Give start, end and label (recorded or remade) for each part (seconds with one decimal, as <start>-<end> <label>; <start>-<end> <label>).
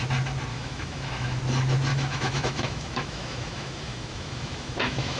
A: 0.0-0.5 recorded; 0.5-1.4 remade; 1.4-1.9 recorded; 1.9-5.2 remade